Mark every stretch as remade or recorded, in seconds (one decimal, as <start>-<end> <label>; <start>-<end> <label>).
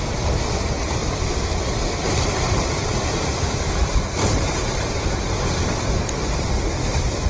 0.0-1.0 recorded; 1.0-4.5 remade; 4.5-7.3 recorded